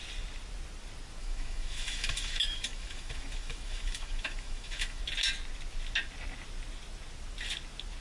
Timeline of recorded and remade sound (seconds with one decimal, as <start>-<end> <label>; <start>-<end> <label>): 0.0-1.2 recorded; 1.2-5.0 remade; 5.0-8.0 recorded